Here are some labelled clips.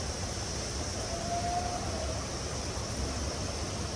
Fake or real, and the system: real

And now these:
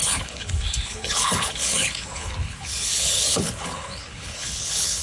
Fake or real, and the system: fake, codec, HILCodec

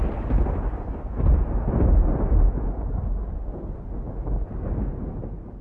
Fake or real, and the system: real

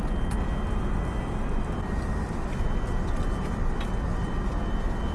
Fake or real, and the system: real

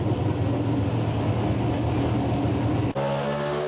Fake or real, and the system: real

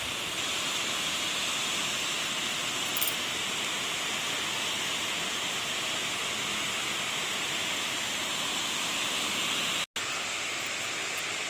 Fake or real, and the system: real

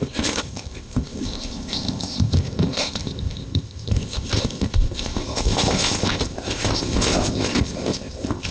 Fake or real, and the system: fake, codec, ZipCodec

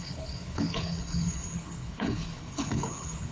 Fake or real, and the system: fake, codec, HILCodec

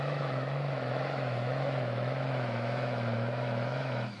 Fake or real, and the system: fake, autoencoder, DAC-VAE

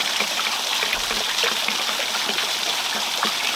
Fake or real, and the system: real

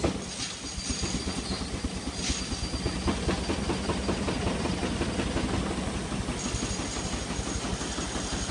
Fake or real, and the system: real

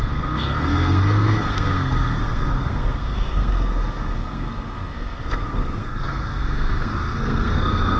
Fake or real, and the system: fake, codec, SNAC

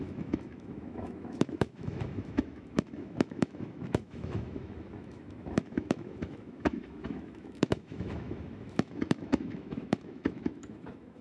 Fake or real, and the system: fake, autoencoder, DAC-VAE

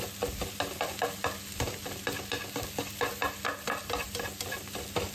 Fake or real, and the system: real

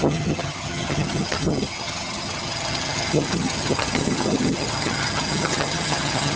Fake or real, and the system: fake, vocoder, HiFi-GAN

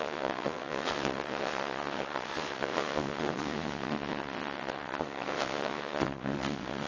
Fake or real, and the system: fake, vocoder, WaveNeXt